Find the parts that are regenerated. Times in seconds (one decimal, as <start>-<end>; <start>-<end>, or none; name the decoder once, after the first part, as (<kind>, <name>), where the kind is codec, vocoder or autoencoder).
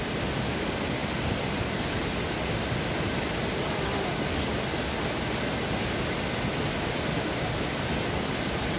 none